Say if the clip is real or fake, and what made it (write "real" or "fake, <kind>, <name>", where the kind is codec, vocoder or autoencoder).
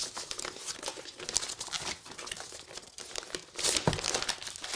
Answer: real